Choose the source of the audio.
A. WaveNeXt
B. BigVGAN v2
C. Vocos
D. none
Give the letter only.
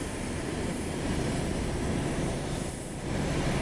B